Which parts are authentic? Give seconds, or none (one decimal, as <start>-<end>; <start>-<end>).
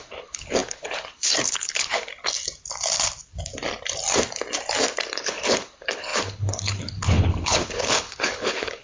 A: 2.1-5.2